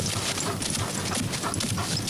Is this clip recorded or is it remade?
recorded